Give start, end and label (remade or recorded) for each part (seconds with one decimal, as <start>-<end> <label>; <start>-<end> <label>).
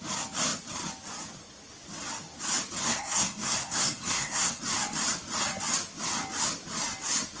0.0-2.8 recorded; 2.8-4.6 remade; 4.6-7.4 recorded